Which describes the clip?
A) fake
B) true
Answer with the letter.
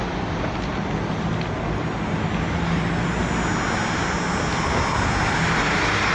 B